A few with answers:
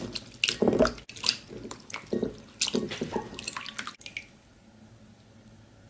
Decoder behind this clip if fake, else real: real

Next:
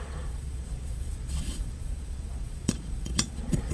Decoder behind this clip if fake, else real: fake, vocoder, Vocos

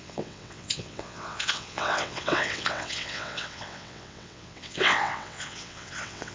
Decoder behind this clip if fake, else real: fake, vocoder, WaveNeXt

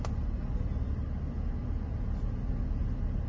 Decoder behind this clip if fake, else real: real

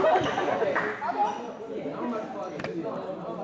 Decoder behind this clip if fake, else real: real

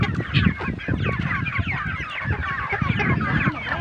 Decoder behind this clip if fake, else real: real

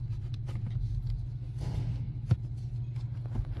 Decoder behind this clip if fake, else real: real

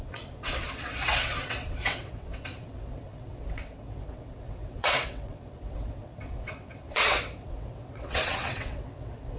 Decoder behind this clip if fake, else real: fake, vocoder, WaveNeXt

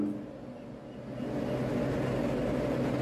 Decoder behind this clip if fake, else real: real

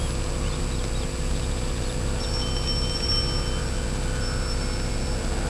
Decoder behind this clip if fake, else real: real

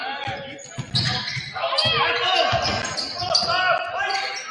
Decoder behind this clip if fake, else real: real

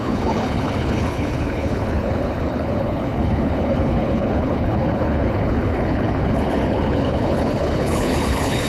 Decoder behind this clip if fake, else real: fake, codec, HILCodec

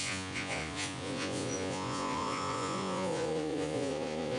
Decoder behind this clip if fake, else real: fake, vocoder, Vocos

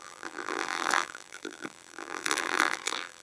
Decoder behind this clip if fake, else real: fake, vocoder, BigVGAN v2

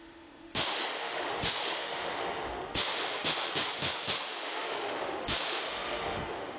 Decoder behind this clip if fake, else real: fake, autoencoder, DAC-VAE